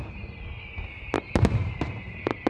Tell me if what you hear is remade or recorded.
recorded